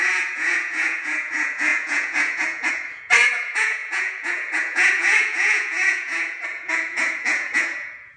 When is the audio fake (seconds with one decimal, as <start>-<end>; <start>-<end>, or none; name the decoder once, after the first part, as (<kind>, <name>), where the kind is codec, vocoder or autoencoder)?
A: 0.0-8.2 (vocoder, Vocos)